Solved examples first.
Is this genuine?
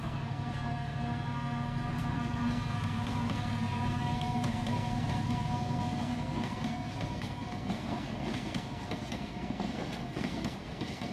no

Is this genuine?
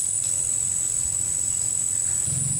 yes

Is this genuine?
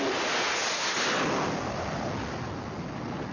yes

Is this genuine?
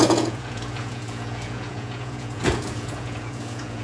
no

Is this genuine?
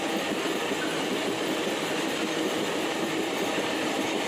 yes